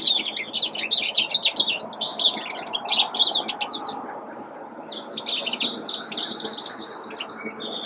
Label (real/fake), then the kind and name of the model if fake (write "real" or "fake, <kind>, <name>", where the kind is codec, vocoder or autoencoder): real